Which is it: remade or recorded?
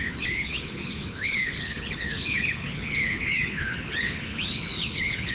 remade